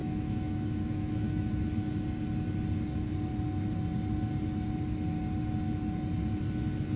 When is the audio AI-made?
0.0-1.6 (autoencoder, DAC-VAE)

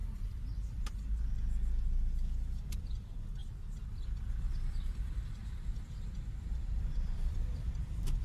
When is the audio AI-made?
2.7-8.2 (vocoder, BigVGAN v2)

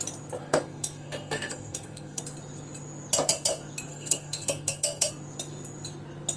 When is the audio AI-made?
0.4-2.2 (codec, SNAC); 3.9-5.1

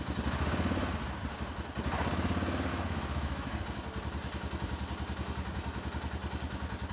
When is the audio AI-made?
2.7-3.6 (autoencoder, DAC-VAE)

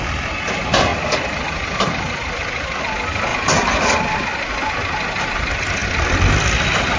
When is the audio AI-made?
0.9-2.8 (vocoder, BigVGAN v2); 3.3-4.7; 5.8-7.0

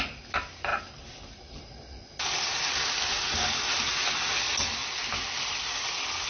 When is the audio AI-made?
0.7-3.8 (vocoder, BigVGAN v2)

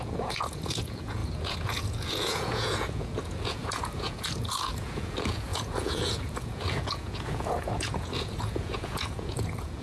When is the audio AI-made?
0.0-9.8 (vocoder, Vocos)